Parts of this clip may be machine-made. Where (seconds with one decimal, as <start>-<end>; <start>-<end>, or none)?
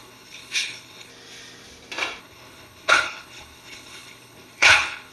0.0-1.1; 2.2-5.1